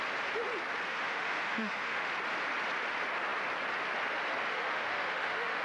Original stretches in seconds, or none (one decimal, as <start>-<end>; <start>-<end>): 0.0-0.9; 2.1-4.5